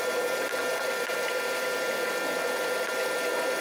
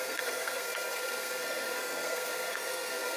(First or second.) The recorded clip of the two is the first